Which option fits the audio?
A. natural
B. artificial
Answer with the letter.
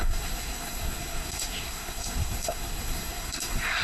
B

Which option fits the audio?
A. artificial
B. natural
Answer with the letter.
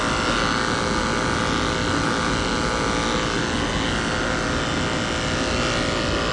B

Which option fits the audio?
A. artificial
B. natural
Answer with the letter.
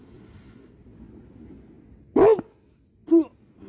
B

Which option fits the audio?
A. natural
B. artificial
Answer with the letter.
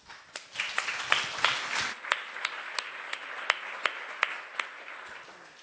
A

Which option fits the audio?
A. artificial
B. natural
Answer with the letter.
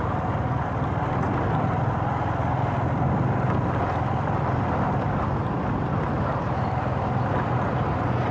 B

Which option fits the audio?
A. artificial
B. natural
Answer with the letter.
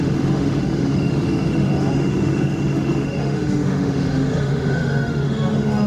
A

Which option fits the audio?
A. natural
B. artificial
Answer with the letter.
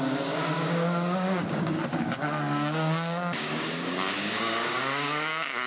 B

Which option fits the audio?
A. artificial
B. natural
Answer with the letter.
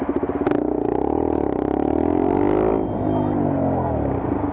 B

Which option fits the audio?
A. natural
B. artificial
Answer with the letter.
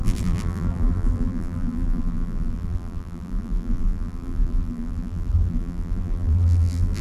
B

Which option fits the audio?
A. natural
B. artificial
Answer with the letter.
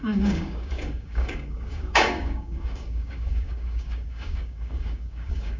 B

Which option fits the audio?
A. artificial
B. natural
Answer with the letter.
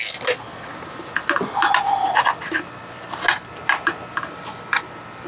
B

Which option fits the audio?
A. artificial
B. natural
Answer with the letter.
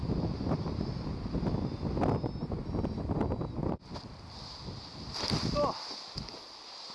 B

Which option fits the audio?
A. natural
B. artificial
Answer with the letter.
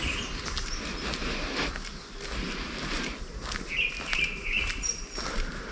A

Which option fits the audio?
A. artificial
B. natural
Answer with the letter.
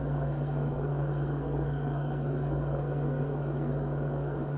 A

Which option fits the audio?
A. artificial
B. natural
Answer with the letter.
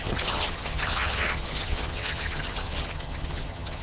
A